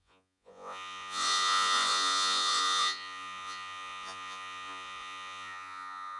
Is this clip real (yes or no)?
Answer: no